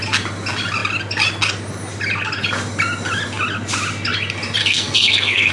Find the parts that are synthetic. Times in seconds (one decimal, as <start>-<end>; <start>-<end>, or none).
4.6-5.5